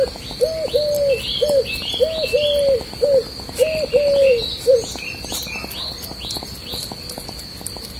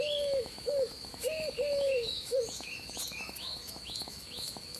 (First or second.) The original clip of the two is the first